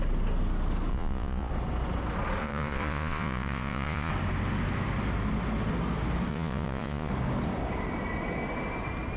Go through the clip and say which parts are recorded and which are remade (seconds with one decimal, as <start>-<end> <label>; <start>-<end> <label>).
0.0-0.9 recorded; 0.9-1.5 remade; 1.5-2.4 recorded; 2.4-4.1 remade; 4.1-6.3 recorded; 6.3-7.1 remade; 7.1-9.2 recorded